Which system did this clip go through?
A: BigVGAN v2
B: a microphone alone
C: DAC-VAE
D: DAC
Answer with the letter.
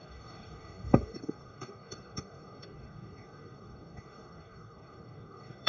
D